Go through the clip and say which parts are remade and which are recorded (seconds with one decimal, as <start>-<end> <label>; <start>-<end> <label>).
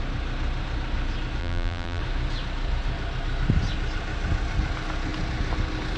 0.0-1.4 recorded; 1.4-2.0 remade; 2.0-6.0 recorded